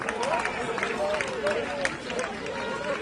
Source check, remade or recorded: recorded